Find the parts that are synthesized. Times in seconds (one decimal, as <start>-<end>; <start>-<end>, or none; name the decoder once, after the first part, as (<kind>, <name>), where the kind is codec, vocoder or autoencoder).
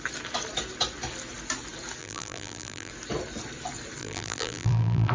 2.0-2.9 (vocoder, BigVGAN v2); 4.0-5.1